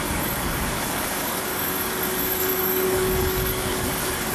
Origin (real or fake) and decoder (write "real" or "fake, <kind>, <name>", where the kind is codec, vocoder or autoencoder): fake, codec, DAC